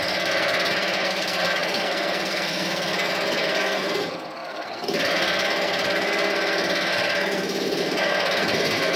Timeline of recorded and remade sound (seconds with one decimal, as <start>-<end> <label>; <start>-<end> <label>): 0.0-9.0 remade